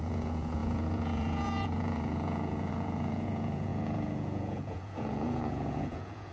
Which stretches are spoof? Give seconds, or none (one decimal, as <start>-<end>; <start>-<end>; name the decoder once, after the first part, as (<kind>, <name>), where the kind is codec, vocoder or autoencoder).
0.0-6.3 (vocoder, Vocos)